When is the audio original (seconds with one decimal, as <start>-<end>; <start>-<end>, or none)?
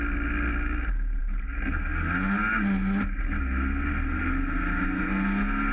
0.0-5.7